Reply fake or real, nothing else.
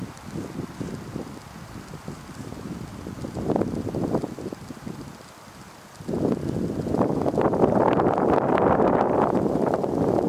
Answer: real